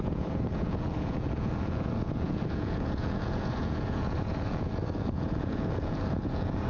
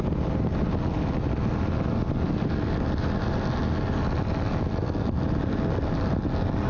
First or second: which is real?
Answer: second